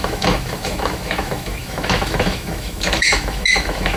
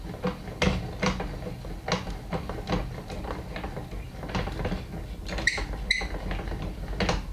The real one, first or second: second